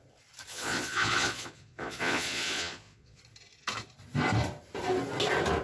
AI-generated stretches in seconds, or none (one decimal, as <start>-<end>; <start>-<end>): 0.5-3.2